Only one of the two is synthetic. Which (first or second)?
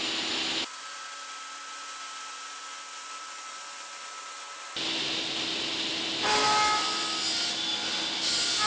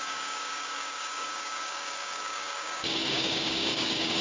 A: second